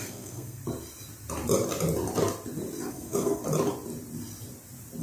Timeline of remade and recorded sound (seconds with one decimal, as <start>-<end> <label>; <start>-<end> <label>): 0.0-0.6 remade; 0.6-2.9 recorded; 2.9-3.4 remade; 3.4-5.0 recorded